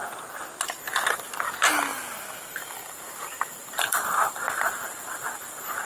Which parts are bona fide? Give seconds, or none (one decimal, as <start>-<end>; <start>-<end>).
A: 0.0-1.9